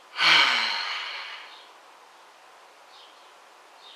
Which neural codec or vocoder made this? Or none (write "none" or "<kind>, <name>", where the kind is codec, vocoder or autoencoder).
none